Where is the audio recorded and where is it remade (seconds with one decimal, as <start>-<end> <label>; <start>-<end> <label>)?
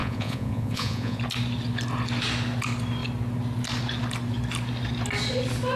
0.0-1.2 remade; 1.2-5.8 recorded